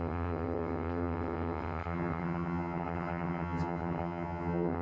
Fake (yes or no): yes